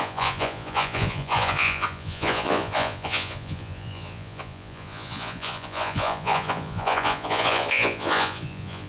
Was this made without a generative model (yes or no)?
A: no